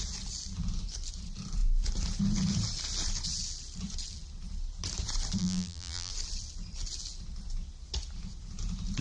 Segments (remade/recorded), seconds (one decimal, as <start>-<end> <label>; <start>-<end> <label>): 0.0-5.4 recorded; 5.4-6.1 remade; 6.1-9.0 recorded